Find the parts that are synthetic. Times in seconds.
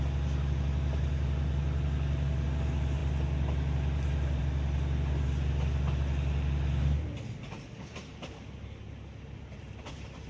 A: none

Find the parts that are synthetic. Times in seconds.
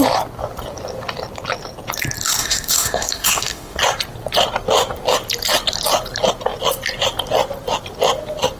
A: 2.4-3.8 (autoencoder, DAC-VAE)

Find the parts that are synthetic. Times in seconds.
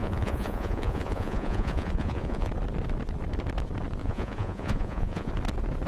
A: 0.0-2.5 (vocoder, Vocos); 4.0-5.3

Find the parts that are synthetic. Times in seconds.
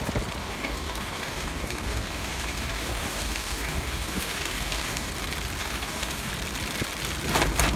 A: 0.4-5.1 (codec, DAC); 5.6-6.3